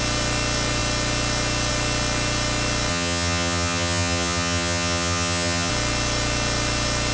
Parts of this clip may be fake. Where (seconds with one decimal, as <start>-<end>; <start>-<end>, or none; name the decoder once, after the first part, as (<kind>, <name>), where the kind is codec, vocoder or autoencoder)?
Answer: 2.9-5.7 (vocoder, HiFi-GAN)